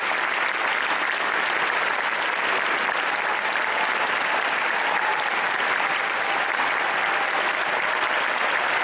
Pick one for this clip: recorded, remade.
recorded